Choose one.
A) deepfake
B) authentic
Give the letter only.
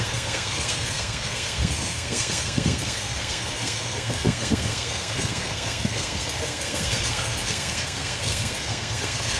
A